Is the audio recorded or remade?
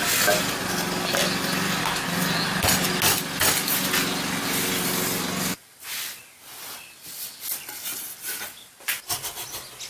recorded